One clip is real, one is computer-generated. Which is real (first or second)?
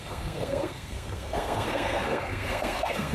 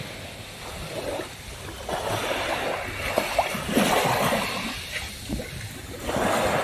second